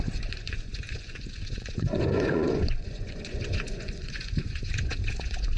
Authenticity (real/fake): fake